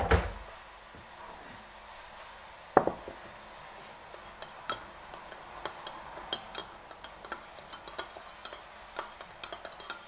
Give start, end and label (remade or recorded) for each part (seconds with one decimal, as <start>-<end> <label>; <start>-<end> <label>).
0.0-10.1 recorded